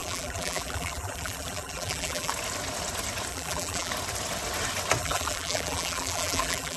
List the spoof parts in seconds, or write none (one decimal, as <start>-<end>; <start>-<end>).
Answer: 0.0-2.3; 3.3-3.9; 5.0-6.8